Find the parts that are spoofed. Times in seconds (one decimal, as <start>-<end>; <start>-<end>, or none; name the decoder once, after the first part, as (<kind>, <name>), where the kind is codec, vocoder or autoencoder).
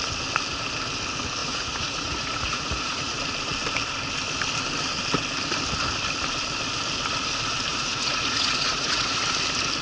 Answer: 1.4-3.2 (vocoder, Vocos); 7.7-9.2